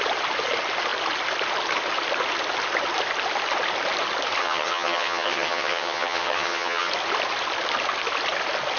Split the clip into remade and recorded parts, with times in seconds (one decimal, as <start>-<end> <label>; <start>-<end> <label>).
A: 0.0-4.4 recorded; 4.4-6.9 remade; 6.9-8.8 recorded